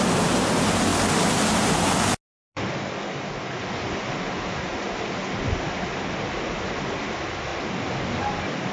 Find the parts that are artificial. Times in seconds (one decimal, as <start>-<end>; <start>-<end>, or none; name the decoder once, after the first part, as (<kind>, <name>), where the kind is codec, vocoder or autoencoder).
none